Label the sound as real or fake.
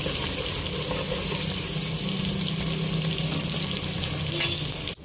real